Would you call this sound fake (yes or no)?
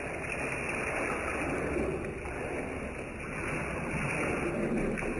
no